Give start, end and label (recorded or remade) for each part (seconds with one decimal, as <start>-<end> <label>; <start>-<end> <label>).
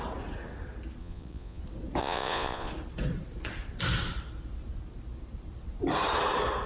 0.0-1.0 recorded; 1.0-1.6 remade; 1.6-2.0 recorded; 2.0-2.7 remade; 2.7-6.7 recorded